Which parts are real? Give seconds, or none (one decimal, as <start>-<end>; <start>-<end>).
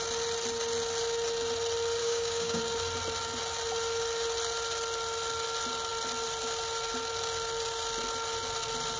0.0-2.0; 2.6-9.0